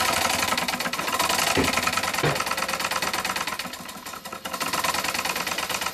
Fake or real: real